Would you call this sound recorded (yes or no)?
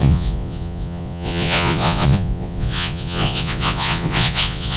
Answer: no